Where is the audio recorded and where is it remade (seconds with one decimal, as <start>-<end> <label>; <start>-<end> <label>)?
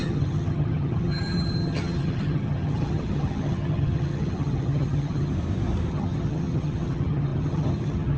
0.0-5.3 remade; 5.3-5.9 recorded; 5.9-8.2 remade